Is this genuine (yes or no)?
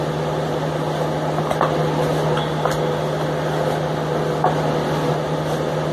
yes